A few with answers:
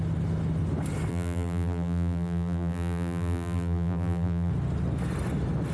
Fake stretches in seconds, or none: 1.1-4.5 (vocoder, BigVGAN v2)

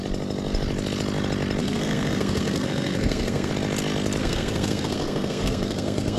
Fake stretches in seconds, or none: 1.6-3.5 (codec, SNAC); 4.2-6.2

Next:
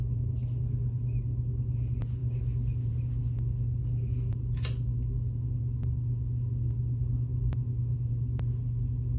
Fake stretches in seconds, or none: none

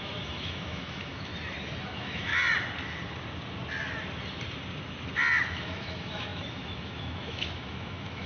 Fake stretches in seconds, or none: 0.0-1.3 (autoencoder, DAC-VAE); 1.8-2.3; 5.5-8.3

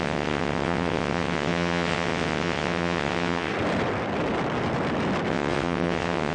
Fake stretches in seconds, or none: 0.0-3.5 (vocoder, WaveNeXt); 5.3-6.3